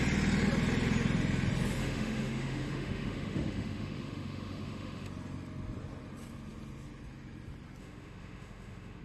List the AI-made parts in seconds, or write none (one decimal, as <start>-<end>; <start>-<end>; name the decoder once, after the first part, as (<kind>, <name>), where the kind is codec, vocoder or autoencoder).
1.8-5.1 (autoencoder, DAC-VAE); 7.8-9.0